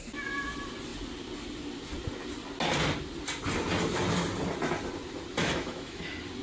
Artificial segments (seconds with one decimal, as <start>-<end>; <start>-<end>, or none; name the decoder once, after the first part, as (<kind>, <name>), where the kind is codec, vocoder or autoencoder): 5.4-6.0 (autoencoder, DAC-VAE)